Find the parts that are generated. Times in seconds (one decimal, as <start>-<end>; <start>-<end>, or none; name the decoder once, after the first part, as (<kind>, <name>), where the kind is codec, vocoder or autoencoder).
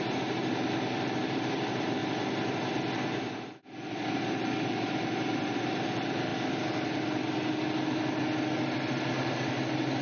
0.0-2.0 (vocoder, BigVGAN v2); 4.2-6.3; 9.1-10.0